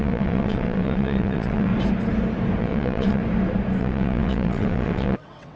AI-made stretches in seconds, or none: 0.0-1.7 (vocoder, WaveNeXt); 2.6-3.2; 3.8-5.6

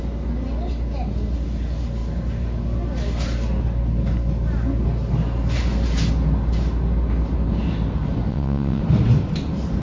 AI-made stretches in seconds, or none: 8.3-8.8 (vocoder, WaveNeXt)

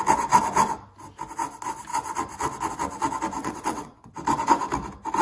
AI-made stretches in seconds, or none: 3.4-4.1 (vocoder, WaveNeXt)

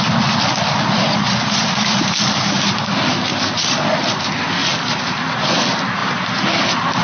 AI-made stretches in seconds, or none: none